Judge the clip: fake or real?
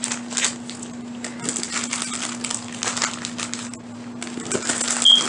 real